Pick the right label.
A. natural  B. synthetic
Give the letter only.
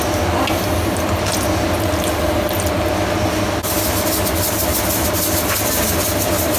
A